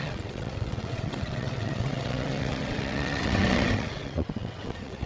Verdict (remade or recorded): remade